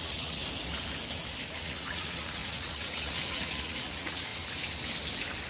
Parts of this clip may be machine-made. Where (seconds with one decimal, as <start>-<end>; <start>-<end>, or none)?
0.0-0.4; 1.6-4.3